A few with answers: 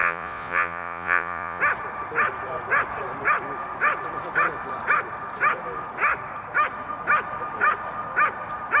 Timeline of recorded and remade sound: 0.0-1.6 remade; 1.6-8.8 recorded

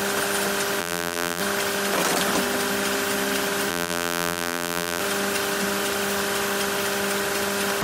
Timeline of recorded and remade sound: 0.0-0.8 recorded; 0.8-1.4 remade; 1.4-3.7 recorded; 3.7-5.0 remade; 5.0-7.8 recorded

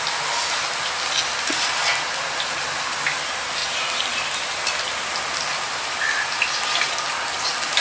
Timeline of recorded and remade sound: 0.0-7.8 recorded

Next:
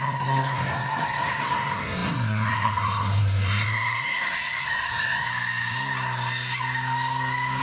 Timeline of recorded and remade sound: 0.0-5.3 remade; 5.3-7.6 recorded

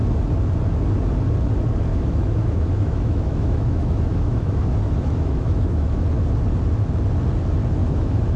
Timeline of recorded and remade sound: 0.0-1.9 recorded; 1.9-6.0 remade; 6.0-7.8 recorded; 7.8-8.4 remade

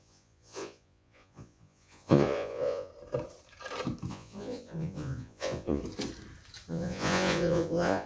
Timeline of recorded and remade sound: 0.0-2.9 remade; 2.9-4.1 recorded; 4.1-5.8 remade; 5.8-6.7 recorded; 6.7-8.1 remade

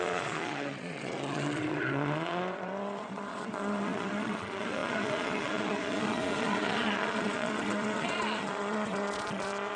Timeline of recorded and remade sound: 0.0-9.8 remade